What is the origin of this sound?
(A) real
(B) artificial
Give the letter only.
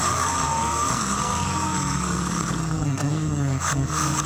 B